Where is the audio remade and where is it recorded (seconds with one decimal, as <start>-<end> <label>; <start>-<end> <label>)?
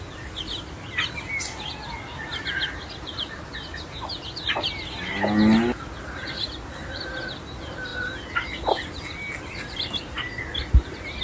0.0-11.2 recorded